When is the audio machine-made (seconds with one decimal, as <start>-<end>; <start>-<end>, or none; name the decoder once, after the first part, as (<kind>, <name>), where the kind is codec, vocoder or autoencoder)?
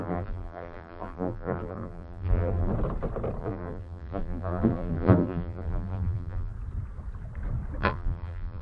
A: 0.0-2.7 (vocoder, BigVGAN v2); 3.4-6.5; 7.8-8.6